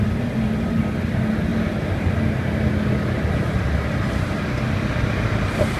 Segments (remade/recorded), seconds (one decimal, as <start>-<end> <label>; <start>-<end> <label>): 0.0-5.8 recorded